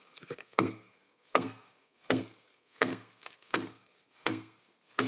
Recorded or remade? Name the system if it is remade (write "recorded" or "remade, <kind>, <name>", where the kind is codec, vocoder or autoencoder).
remade, codec, SNAC